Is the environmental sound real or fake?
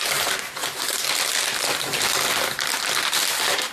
real